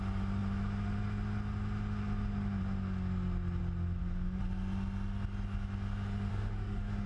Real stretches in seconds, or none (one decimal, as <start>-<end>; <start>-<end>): 0.0-6.3

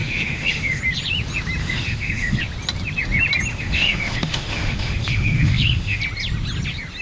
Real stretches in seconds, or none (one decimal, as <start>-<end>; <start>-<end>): 0.8-1.6; 2.4-3.5; 6.0-7.0

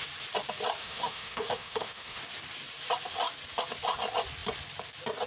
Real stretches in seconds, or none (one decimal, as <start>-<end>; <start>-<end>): 0.0-0.8; 2.2-5.3

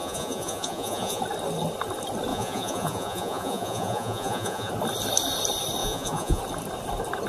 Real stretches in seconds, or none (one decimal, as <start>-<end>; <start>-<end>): 1.2-2.3; 4.7-5.8; 6.4-7.3

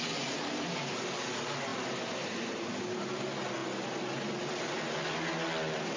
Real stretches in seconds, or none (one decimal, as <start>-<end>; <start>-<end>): 0.0-6.0

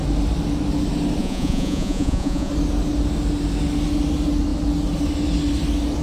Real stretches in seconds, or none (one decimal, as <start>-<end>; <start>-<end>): 0.0-1.2; 2.5-6.0